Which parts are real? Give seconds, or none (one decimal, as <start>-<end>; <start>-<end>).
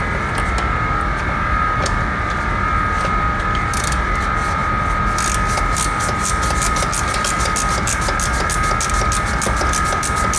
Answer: 0.0-10.4